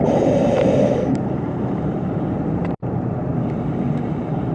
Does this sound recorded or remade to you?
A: remade